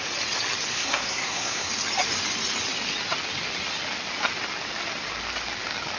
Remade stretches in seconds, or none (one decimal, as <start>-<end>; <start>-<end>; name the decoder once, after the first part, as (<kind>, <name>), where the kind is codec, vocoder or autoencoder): 0.7-1.7 (codec, SNAC)